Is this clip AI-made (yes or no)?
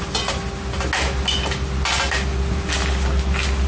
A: no